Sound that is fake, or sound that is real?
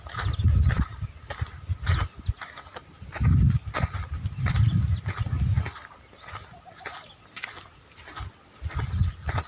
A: real